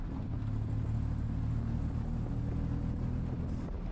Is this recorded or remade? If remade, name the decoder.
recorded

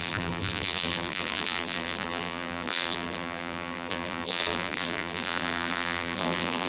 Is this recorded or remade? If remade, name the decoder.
remade, vocoder, BigVGAN v2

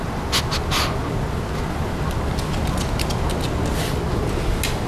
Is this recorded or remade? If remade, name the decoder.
recorded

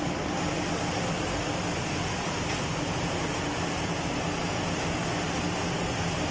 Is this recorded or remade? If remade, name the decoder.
remade, vocoder, BigVGAN v2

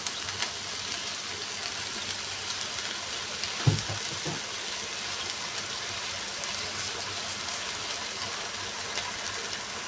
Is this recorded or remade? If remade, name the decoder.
recorded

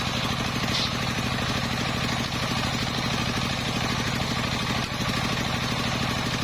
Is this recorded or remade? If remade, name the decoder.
recorded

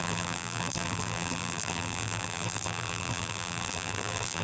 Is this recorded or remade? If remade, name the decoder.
remade, vocoder, BigVGAN v2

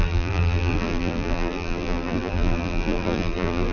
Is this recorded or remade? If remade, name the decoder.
remade, vocoder, BigVGAN v2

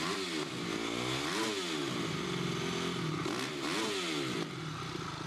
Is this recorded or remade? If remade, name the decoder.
recorded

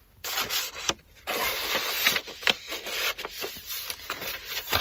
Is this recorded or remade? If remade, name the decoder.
recorded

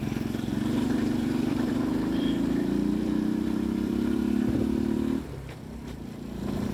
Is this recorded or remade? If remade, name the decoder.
remade, vocoder, BigVGAN v2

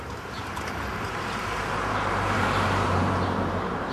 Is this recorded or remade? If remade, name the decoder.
remade, vocoder, BigVGAN v2